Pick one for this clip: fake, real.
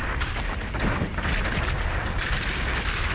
real